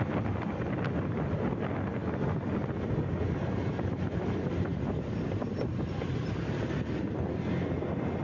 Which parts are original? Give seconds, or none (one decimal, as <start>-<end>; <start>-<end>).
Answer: 0.0-8.2